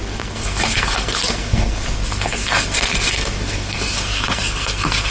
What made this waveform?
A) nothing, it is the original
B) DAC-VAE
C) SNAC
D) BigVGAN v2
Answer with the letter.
C